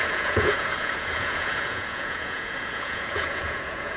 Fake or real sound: fake